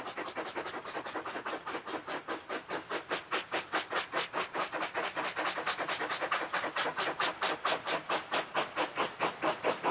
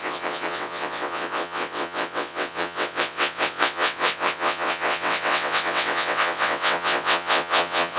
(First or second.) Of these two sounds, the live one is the first